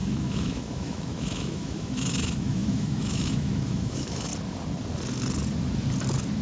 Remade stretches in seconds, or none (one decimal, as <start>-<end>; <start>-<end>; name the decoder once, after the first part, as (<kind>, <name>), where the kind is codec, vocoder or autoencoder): 0.0-4.3 (autoencoder, DAC-VAE)